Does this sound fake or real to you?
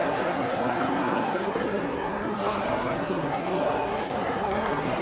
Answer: fake